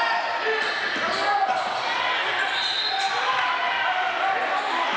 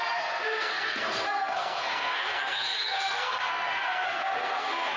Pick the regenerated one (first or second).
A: second